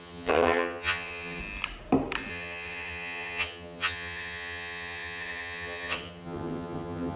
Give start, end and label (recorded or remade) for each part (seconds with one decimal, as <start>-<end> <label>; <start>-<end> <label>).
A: 0.0-1.4 remade; 1.4-2.3 recorded; 2.3-7.2 remade